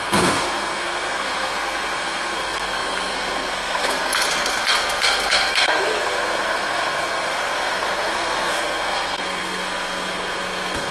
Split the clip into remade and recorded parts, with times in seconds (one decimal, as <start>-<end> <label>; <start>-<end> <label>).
0.0-10.9 remade